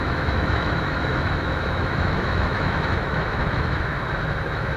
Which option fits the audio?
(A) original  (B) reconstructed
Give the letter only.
B